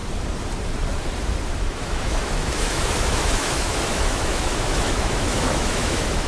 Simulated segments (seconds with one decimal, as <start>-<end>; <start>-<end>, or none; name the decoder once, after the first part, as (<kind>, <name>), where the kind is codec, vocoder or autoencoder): 1.5-6.3 (autoencoder, DAC-VAE)